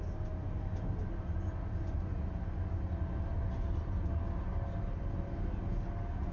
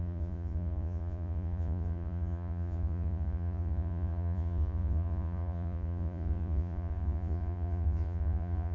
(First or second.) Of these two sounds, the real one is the first